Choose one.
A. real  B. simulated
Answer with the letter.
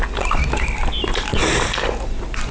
A